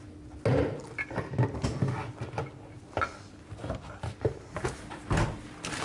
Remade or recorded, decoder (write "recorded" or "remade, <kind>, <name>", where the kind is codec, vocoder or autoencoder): recorded